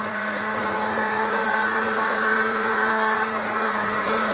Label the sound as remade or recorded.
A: remade